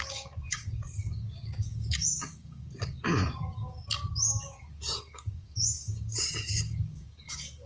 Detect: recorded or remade remade